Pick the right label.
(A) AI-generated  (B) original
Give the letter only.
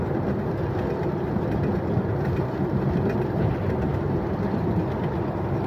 B